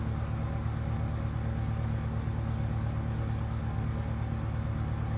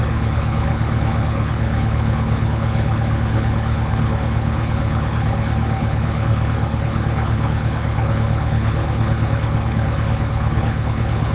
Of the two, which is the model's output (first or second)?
second